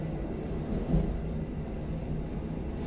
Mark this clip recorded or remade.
recorded